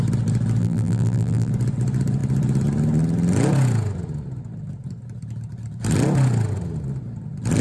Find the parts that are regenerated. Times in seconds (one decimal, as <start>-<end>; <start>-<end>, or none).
0.6-1.5